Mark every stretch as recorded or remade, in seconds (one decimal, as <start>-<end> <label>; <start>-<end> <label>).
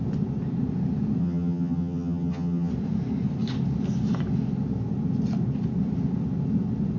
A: 0.0-1.2 recorded; 1.2-2.7 remade; 2.7-7.0 recorded